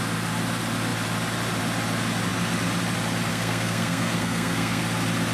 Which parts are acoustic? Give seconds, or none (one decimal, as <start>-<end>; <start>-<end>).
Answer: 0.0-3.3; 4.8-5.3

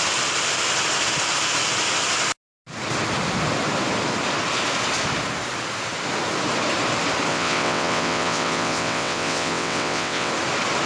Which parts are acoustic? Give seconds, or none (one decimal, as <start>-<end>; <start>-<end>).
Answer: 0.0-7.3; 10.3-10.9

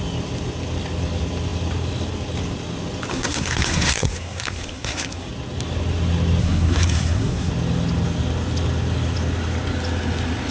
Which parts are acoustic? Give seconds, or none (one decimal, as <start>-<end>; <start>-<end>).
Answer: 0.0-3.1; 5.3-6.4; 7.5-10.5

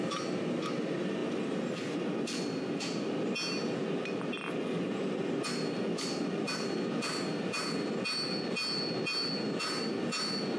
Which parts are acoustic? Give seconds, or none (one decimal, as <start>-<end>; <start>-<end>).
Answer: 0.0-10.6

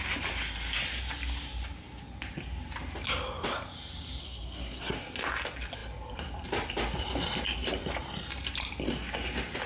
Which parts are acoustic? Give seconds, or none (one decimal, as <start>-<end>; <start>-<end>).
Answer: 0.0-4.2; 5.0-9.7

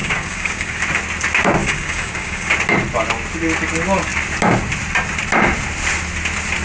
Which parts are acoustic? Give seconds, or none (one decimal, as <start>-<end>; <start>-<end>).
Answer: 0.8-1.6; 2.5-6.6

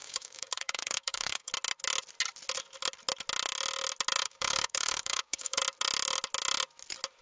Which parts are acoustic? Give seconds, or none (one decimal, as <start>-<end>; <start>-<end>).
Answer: 1.5-4.2; 5.6-7.2

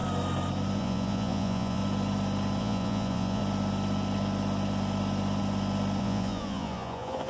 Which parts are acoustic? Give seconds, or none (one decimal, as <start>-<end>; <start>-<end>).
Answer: 0.0-0.8; 1.8-2.6; 3.4-6.0